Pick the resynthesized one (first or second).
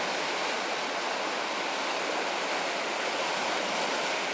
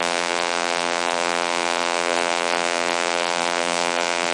second